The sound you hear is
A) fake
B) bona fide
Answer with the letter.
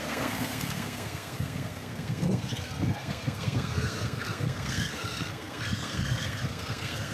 A